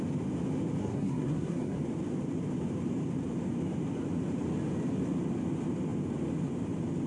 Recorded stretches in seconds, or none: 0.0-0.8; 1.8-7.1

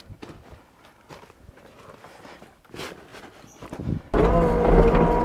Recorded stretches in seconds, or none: 0.0-5.2

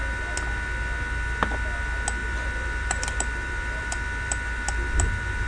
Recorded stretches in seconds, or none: 0.0-2.2

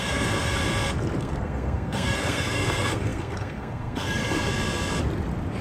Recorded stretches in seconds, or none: 0.5-1.2; 4.2-5.6